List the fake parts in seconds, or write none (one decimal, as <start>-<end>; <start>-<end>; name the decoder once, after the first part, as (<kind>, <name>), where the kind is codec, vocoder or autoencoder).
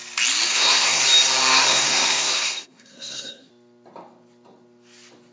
0.5-1.0 (codec, SNAC); 1.7-3.5